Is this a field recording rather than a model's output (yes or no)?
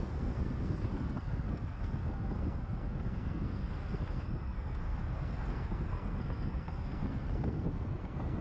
no